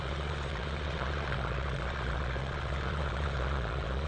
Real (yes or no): no